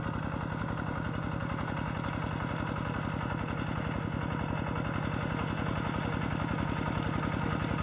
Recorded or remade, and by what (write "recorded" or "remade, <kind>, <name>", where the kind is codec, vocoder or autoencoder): recorded